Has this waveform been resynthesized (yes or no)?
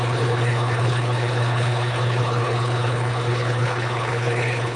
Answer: yes